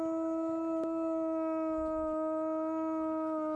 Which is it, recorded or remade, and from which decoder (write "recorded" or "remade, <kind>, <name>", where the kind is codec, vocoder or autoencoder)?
recorded